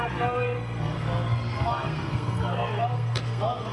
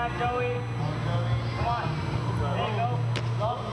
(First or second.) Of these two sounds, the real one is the second